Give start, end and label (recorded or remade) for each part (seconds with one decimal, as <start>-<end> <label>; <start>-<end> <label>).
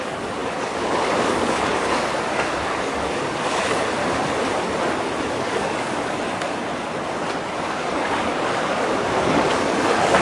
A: 0.0-4.0 remade; 4.0-5.3 recorded; 5.3-6.6 remade; 6.6-7.6 recorded; 7.6-10.2 remade